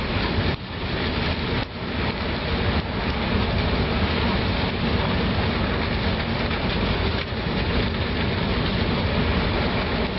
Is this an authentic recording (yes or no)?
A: yes